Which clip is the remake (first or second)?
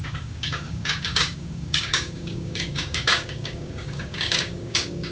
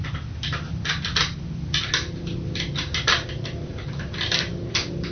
first